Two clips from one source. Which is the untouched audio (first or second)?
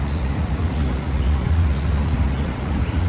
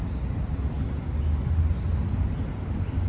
second